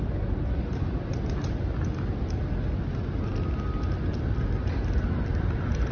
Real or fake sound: real